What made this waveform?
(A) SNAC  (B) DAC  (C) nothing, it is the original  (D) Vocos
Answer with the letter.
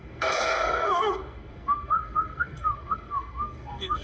A